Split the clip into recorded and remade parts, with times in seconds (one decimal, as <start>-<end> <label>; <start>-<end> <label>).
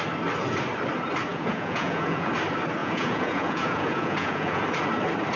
0.0-1.3 recorded; 1.3-2.3 remade; 2.3-2.8 recorded; 2.8-4.6 remade; 4.6-5.4 recorded